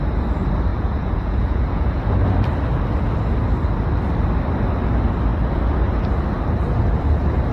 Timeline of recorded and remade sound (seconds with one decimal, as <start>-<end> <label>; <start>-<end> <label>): 0.0-0.7 recorded; 0.7-2.0 remade; 2.0-7.5 recorded